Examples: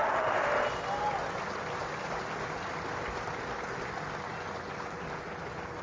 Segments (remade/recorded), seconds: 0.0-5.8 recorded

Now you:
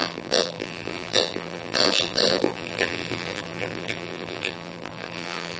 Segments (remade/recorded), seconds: 0.0-5.6 remade

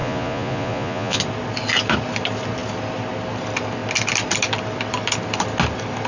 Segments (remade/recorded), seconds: 0.0-1.2 remade; 1.2-6.1 recorded

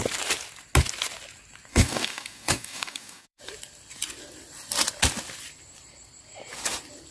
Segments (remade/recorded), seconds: 0.0-1.7 recorded; 1.7-3.4 remade; 3.4-7.1 recorded

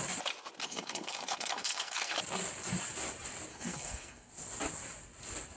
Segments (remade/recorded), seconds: 0.0-0.6 recorded; 0.6-2.2 remade; 2.2-3.5 recorded; 3.5-4.3 remade; 4.3-5.6 recorded